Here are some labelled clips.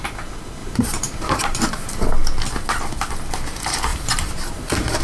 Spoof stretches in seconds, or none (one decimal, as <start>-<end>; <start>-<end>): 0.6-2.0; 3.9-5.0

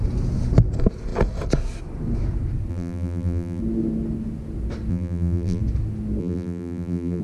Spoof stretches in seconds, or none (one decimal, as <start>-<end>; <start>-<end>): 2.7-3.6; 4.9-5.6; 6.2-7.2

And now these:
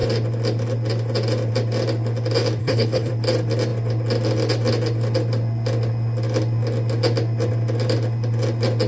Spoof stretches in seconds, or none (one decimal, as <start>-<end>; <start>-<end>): 2.6-3.1